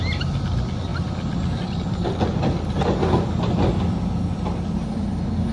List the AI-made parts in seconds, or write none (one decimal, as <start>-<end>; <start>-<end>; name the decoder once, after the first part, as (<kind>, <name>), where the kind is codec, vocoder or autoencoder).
none

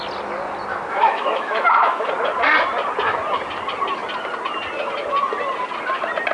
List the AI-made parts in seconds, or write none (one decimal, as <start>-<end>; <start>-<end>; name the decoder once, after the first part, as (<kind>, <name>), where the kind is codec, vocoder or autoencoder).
0.7-2.1 (autoencoder, DAC-VAE)

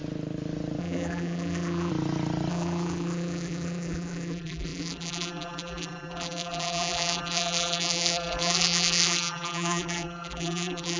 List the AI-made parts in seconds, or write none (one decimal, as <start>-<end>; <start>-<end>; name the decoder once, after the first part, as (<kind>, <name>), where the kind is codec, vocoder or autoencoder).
0.8-1.9 (vocoder, BigVGAN v2); 2.5-11.0